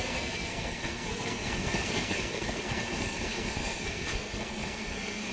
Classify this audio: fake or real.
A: fake